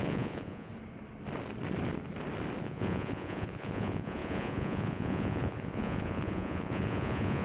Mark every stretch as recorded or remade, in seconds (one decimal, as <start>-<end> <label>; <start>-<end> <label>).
0.0-0.7 remade; 0.7-2.6 recorded; 2.6-7.4 remade